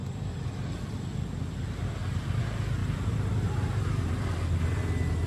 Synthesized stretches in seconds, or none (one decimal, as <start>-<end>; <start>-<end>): 2.8-3.8